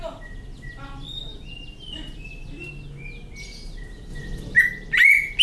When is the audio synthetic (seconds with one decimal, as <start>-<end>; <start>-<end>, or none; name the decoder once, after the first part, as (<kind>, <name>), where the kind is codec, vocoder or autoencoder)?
1.3-2.7 (vocoder, BigVGAN v2)